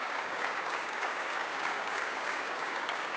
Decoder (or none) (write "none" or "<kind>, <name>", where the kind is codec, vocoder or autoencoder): codec, DAC